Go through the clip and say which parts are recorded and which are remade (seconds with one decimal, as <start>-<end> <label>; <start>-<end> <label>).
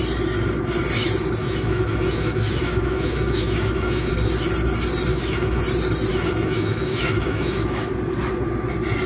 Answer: 0.0-1.4 recorded; 1.4-4.1 remade; 4.1-5.1 recorded; 5.1-5.6 remade; 5.6-6.1 recorded; 6.1-7.9 remade; 7.9-9.1 recorded